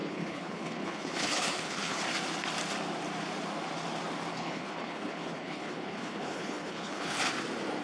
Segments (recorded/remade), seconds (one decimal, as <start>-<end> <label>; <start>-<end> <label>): 0.0-2.0 remade; 2.0-4.3 recorded; 4.3-7.3 remade; 7.3-7.8 recorded